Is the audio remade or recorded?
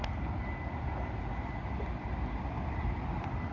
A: recorded